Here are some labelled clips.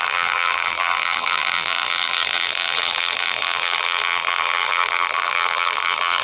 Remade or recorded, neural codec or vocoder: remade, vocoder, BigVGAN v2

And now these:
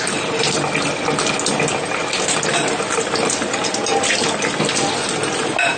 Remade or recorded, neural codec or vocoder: recorded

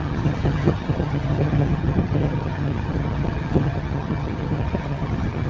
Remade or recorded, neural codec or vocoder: remade, vocoder, HiFi-GAN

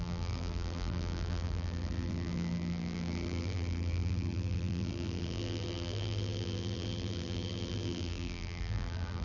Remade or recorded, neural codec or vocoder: remade, vocoder, BigVGAN v2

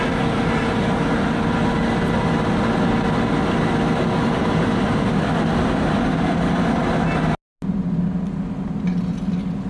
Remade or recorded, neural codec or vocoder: recorded